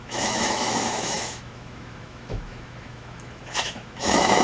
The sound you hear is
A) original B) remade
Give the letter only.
B